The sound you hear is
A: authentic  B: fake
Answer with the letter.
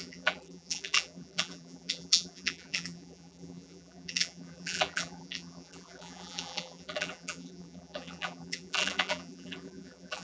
B